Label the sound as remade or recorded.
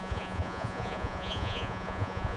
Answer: remade